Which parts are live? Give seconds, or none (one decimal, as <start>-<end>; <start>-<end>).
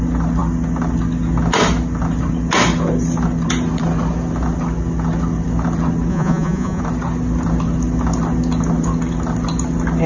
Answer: 0.0-6.1; 6.8-10.1